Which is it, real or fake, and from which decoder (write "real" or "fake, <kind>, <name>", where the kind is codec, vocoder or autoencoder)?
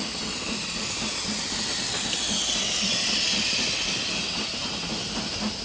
real